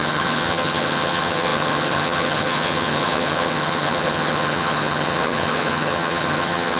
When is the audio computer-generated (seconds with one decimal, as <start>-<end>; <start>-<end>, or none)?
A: 0.0-6.8